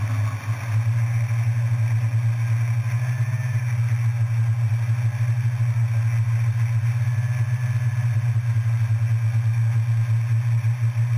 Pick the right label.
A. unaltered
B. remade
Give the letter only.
A